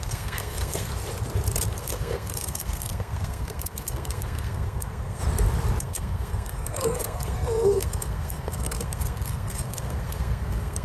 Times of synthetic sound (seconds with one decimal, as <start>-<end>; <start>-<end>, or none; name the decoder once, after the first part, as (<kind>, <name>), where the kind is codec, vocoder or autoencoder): 0.0-0.9 (codec, SNAC); 1.8-5.2; 5.8-10.8